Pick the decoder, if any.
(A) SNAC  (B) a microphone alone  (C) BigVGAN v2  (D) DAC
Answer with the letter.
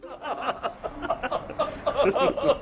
B